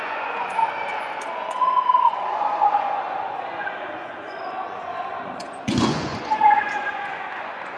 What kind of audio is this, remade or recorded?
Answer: remade